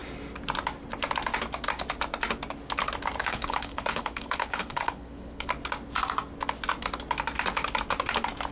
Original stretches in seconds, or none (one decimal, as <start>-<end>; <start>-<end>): 0.0-3.2; 5.5-8.5